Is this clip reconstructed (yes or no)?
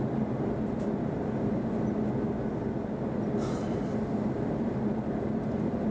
no